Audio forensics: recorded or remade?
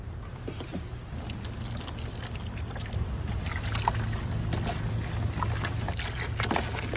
recorded